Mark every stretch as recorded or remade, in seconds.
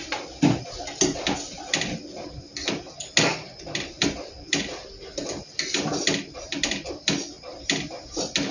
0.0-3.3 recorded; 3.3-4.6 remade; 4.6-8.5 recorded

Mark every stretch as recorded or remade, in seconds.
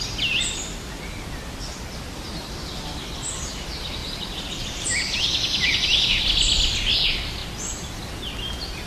0.0-8.9 recorded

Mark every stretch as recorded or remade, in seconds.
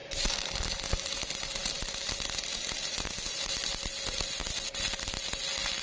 0.0-5.8 recorded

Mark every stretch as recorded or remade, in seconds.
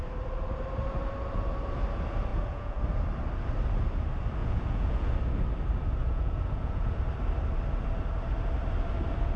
0.0-2.3 recorded; 2.3-2.8 remade; 2.8-4.4 recorded; 4.4-5.1 remade; 5.1-6.0 recorded; 6.0-7.0 remade; 7.0-9.4 recorded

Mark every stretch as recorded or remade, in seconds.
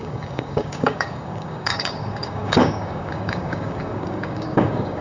0.0-5.0 remade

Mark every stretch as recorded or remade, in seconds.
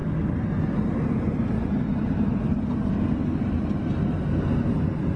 0.0-5.2 recorded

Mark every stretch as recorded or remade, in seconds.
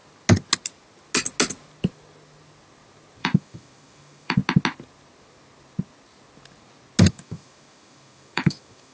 0.0-3.2 recorded; 3.2-4.4 remade; 4.4-7.1 recorded; 7.1-8.9 remade